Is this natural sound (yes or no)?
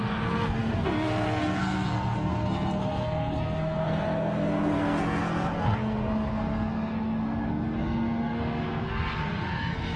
no